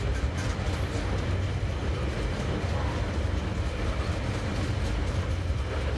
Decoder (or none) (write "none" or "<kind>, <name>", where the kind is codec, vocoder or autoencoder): none